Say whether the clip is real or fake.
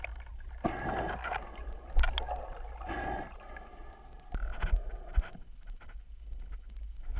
real